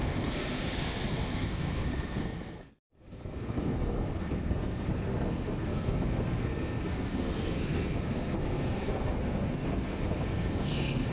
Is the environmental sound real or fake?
fake